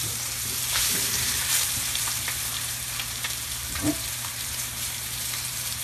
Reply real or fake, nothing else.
fake